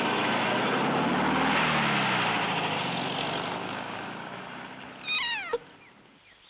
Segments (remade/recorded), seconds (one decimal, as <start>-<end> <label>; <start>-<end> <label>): 0.0-3.6 recorded; 3.6-4.4 remade; 4.4-6.5 recorded